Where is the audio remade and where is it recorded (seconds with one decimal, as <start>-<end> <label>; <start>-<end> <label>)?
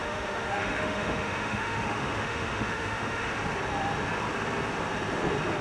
0.0-3.3 remade; 3.3-5.6 recorded